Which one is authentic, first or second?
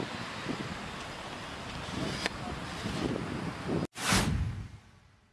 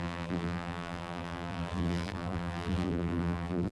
first